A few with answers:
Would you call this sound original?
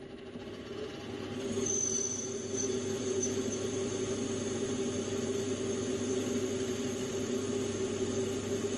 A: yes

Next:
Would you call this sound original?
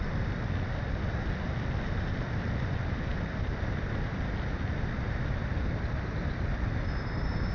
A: yes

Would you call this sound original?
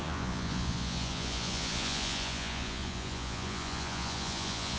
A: no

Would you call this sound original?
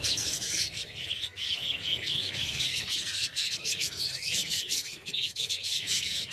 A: no